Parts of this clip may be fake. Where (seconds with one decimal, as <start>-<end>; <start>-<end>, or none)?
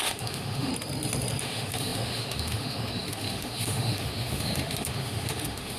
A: 0.0-0.7; 1.4-5.8